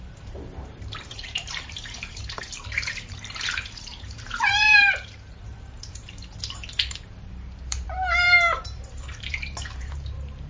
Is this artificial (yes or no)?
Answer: yes